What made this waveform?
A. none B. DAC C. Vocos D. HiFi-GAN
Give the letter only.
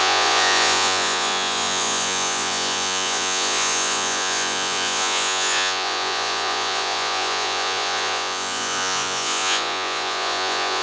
C